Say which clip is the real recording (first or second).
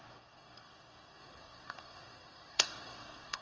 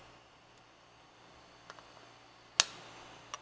second